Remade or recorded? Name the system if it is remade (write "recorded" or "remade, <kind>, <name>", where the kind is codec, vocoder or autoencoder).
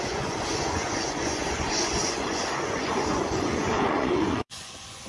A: remade, vocoder, Vocos